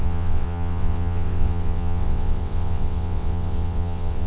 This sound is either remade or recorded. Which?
remade